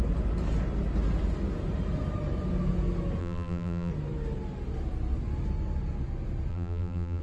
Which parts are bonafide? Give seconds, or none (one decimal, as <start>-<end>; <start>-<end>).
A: 0.0-3.2; 3.9-6.5